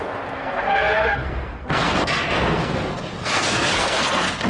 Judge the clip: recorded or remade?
remade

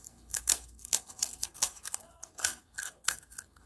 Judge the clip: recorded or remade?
remade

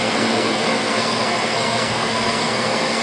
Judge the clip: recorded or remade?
remade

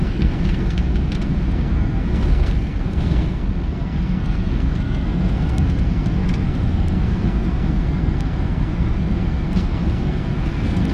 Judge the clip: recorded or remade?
remade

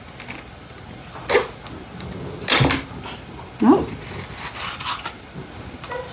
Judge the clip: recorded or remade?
recorded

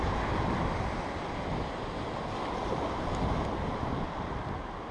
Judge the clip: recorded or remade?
recorded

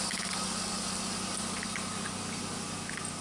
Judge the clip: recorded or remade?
recorded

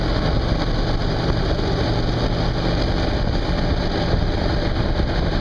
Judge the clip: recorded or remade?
recorded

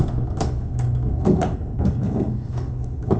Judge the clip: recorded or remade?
remade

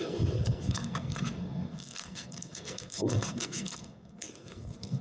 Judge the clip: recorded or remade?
remade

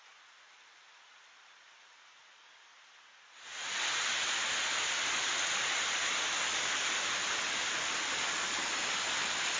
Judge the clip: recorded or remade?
recorded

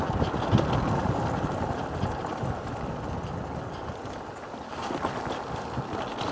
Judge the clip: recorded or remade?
recorded